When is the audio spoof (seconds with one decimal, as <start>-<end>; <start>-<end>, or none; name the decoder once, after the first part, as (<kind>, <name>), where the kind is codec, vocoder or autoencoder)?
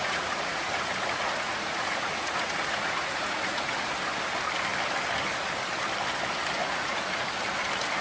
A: 0.0-3.9 (vocoder, Vocos); 6.6-7.3